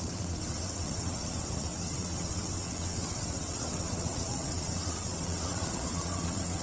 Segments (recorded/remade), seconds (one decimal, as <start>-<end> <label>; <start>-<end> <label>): 0.0-6.6 remade